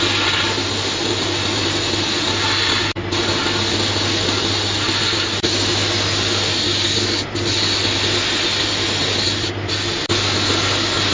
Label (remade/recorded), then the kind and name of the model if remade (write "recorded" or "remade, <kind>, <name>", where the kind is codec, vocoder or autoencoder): recorded